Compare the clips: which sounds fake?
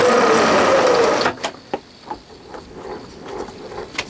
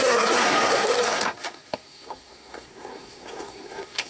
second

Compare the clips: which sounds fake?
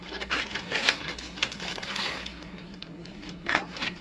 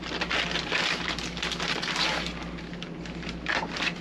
first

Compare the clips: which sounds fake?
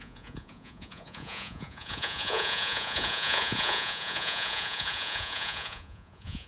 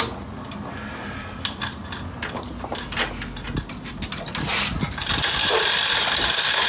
first